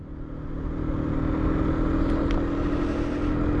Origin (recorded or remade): recorded